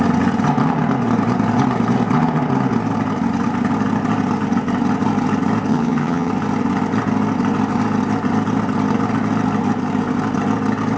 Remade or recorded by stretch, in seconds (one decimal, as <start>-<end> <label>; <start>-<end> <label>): 0.0-5.7 recorded; 5.7-6.3 remade; 6.3-11.0 recorded